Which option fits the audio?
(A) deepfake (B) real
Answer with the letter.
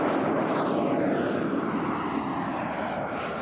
B